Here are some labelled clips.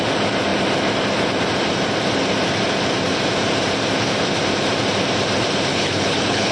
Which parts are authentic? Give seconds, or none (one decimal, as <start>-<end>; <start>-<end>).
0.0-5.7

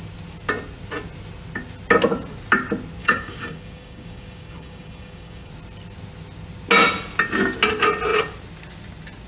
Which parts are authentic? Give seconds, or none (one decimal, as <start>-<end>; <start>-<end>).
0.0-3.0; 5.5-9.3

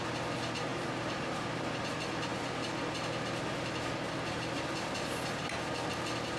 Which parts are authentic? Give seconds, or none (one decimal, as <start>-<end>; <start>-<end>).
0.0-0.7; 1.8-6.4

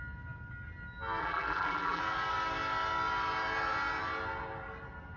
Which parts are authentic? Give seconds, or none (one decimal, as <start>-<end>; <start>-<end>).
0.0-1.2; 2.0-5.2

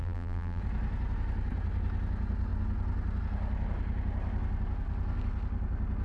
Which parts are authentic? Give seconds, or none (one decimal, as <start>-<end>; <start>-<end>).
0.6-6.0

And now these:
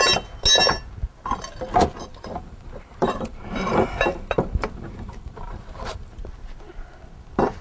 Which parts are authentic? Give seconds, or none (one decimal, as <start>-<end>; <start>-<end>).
0.0-2.1; 6.2-7.6